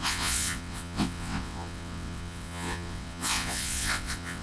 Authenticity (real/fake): fake